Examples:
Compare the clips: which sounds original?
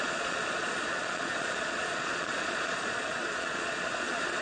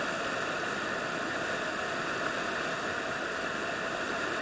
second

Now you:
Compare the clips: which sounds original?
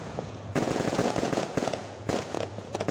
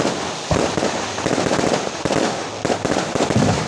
second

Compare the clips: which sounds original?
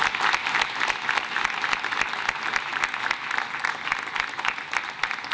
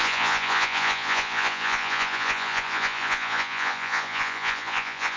first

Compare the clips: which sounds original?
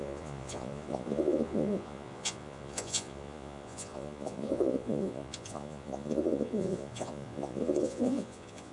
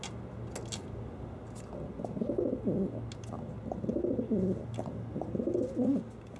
second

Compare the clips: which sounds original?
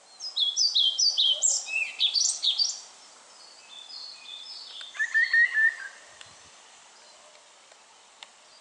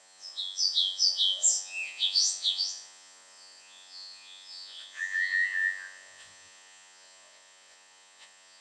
first